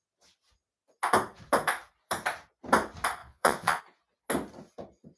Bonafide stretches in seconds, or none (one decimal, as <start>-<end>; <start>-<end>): 0.0-3.2; 3.8-5.2